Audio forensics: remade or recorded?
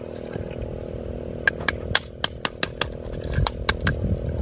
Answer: recorded